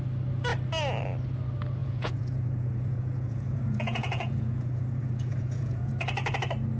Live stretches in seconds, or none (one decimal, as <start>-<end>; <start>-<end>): 0.0-1.8; 5.9-6.8